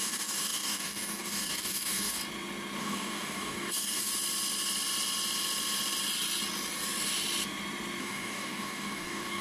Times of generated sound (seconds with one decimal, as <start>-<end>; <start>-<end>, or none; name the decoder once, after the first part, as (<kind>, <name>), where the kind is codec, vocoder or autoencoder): 0.0-2.2 (codec, DAC); 2.8-4.1; 8.0-9.4